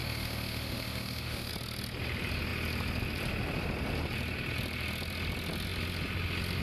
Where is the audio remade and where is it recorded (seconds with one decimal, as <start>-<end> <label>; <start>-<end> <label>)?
0.0-1.5 remade; 1.5-6.6 recorded